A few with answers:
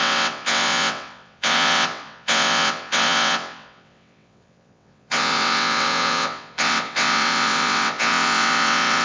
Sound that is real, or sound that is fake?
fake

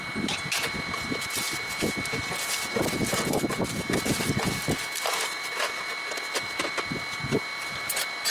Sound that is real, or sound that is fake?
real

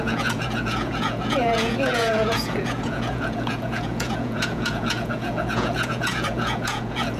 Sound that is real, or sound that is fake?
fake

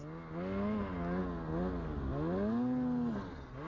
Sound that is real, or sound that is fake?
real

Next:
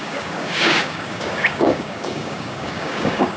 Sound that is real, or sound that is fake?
fake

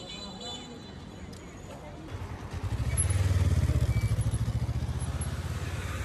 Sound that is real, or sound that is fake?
real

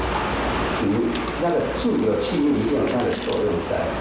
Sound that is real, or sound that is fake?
real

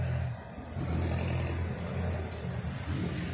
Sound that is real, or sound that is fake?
real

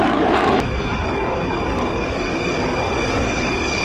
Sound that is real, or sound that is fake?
fake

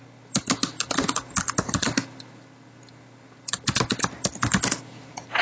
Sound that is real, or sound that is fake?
real